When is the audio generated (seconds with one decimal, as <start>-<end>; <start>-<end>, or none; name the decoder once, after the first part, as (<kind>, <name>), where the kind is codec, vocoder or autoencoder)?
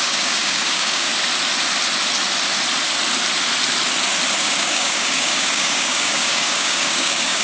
0.0-1.1 (codec, DAC); 4.4-7.4